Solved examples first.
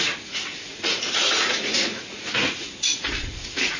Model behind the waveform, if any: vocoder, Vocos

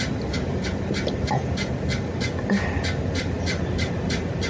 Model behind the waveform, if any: none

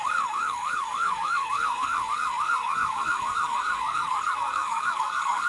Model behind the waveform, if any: codec, SNAC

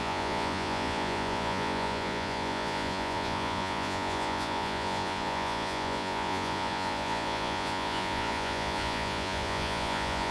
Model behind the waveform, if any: vocoder, Vocos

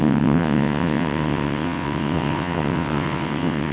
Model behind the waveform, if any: vocoder, WaveNeXt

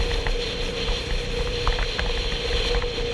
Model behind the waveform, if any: none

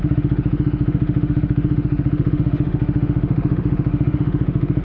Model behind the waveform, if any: autoencoder, DAC-VAE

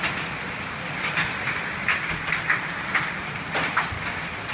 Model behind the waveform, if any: none